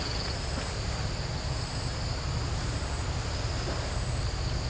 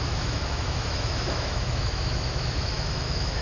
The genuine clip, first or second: first